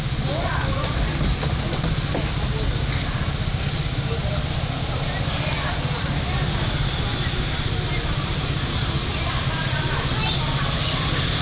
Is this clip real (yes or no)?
yes